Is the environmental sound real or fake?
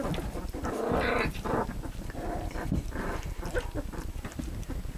real